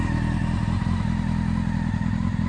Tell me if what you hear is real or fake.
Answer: real